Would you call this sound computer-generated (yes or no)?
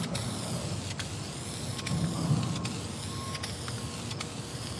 no